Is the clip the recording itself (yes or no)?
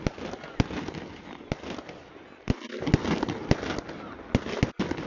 yes